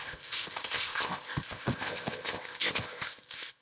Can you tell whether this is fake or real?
fake